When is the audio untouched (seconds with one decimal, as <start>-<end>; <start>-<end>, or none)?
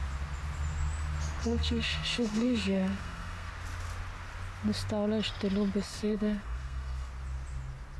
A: 0.0-1.4; 3.5-5.9; 7.1-8.0